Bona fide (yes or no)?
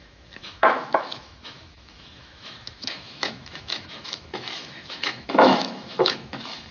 no